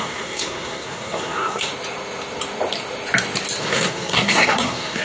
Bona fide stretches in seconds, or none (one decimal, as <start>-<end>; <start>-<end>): 1.7-3.6